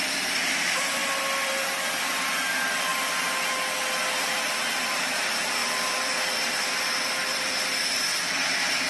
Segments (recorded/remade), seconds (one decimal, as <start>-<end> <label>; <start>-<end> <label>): 0.0-2.9 remade; 2.9-5.1 recorded; 5.1-8.9 remade